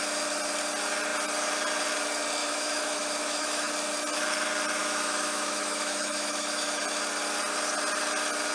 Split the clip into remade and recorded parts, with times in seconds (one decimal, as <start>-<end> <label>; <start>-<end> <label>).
0.0-2.4 recorded; 2.4-3.7 remade; 3.7-4.8 recorded; 4.8-6.8 remade; 6.8-8.5 recorded